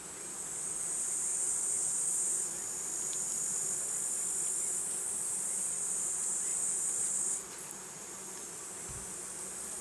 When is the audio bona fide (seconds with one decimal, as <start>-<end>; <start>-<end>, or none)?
0.0-9.8

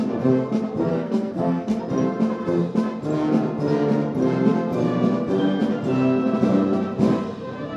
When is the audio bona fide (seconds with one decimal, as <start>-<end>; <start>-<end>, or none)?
0.0-0.9; 1.8-7.8

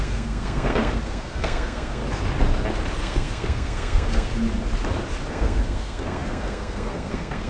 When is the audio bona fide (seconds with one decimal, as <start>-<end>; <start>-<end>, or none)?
2.0-3.0; 4.3-5.3

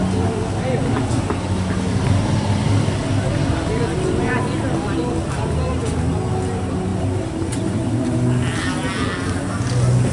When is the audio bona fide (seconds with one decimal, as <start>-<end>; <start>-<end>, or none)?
0.0-10.1

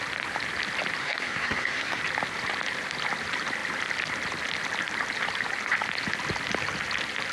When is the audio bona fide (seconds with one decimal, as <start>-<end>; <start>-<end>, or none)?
0.0-1.0; 2.0-7.3

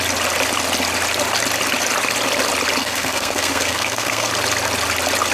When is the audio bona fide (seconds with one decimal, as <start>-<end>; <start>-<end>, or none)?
0.0-2.8; 4.3-5.3

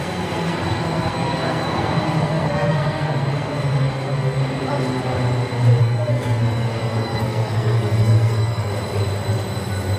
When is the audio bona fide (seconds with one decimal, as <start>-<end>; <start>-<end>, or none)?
4.4-5.8; 8.7-10.0

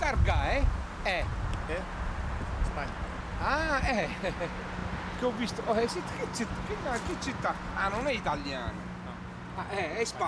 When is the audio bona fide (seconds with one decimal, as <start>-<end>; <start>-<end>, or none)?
0.0-10.3